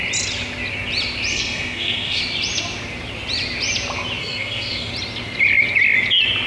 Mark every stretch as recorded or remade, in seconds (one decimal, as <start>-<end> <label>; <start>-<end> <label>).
0.0-1.3 recorded; 1.3-2.2 remade; 2.2-4.2 recorded; 4.2-4.9 remade; 4.9-6.5 recorded